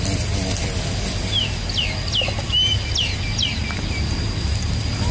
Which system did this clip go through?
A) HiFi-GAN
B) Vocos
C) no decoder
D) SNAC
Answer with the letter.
C